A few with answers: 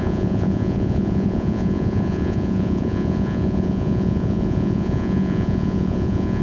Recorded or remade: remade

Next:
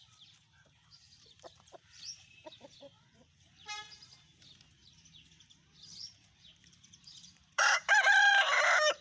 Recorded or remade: remade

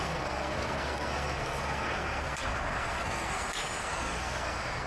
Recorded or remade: remade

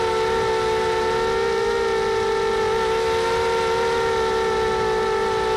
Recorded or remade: recorded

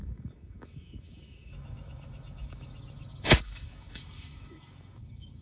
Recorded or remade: remade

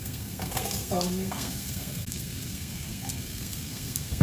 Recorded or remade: remade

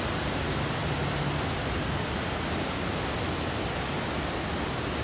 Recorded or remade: recorded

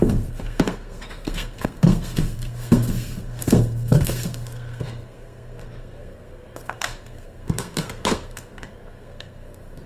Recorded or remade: remade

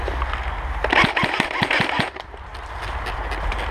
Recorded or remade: recorded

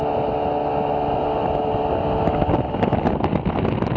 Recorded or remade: recorded